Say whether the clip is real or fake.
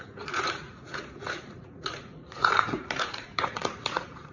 fake